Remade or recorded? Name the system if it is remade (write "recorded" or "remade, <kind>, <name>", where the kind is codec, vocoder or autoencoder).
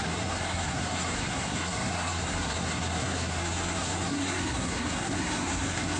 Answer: remade, codec, SNAC